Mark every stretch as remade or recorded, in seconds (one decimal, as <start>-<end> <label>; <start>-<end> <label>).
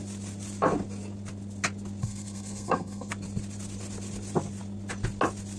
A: 0.0-2.0 recorded; 2.0-3.1 remade; 3.1-5.6 recorded